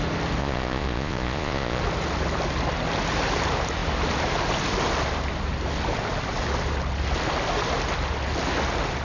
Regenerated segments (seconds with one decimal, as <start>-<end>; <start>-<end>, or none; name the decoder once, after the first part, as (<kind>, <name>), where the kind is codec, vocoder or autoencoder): 0.4-1.8 (vocoder, Vocos)